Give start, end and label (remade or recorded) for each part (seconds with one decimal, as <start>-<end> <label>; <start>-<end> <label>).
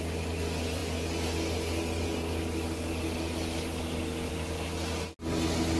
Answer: 0.0-5.8 recorded